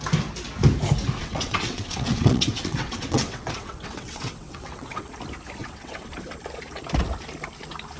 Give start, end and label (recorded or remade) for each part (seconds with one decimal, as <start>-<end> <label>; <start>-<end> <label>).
0.0-1.2 recorded; 1.2-5.1 remade; 5.1-5.6 recorded; 5.6-6.1 remade; 6.1-8.0 recorded